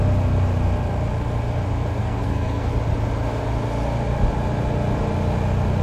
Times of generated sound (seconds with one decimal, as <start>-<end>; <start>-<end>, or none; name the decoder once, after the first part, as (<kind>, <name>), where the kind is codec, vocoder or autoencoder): 2.0-2.7 (codec, SNAC)